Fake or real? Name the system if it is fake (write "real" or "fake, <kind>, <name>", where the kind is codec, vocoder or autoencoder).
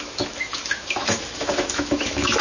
fake, autoencoder, DAC-VAE